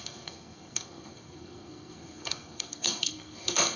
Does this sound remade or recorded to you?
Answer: remade